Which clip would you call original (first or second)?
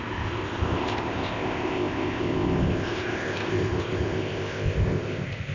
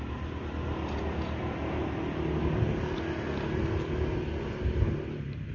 second